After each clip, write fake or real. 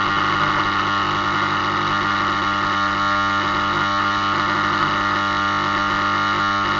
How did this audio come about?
real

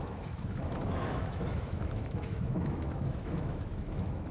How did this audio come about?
fake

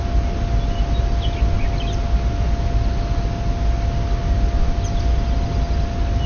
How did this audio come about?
real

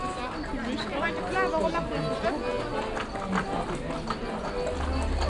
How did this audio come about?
real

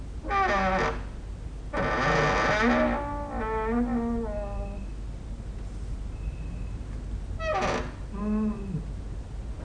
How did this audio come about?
real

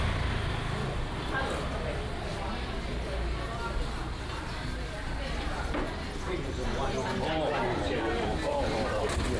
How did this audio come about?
real